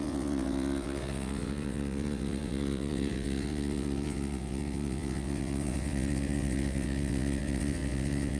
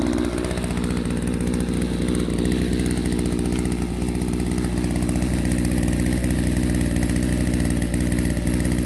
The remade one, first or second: first